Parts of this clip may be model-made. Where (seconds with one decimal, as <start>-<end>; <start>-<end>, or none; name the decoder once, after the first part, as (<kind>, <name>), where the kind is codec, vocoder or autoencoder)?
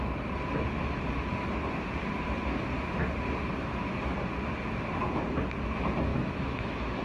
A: 6.1-7.0 (autoencoder, DAC-VAE)